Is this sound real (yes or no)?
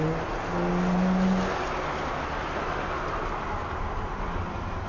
yes